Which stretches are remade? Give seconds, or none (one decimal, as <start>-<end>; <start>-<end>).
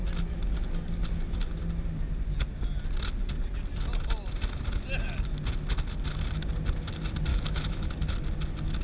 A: 7.3-7.9